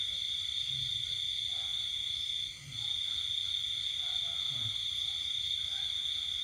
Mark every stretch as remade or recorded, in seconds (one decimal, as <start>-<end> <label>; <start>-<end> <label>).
0.0-0.7 remade; 0.7-1.7 recorded; 1.7-2.5 remade; 2.5-4.5 recorded; 4.5-5.7 remade; 5.7-6.4 recorded